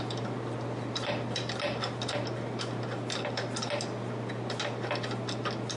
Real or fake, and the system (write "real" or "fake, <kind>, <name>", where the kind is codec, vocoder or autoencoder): real